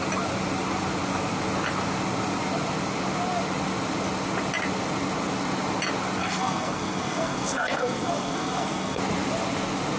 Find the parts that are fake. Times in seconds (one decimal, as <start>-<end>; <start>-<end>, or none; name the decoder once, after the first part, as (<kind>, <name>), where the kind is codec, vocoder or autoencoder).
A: 6.2-9.0 (codec, SNAC)